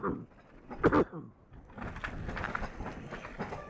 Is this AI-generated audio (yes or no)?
no